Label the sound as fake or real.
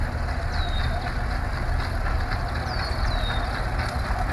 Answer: real